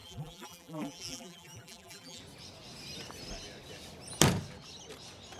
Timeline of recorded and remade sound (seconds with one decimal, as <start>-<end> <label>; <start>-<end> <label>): 0.0-2.2 remade; 2.2-5.4 recorded